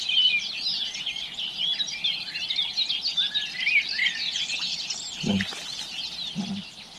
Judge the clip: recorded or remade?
recorded